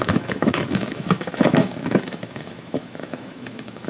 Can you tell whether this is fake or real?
fake